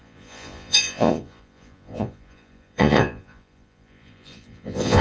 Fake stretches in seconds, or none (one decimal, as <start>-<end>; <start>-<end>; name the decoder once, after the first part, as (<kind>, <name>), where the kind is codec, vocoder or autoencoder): 0.0-5.0 (vocoder, Vocos)